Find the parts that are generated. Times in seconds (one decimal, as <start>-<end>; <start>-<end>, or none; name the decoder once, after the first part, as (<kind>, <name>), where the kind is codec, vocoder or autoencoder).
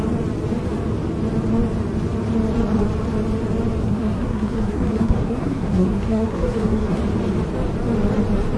3.8-7.0 (codec, SNAC)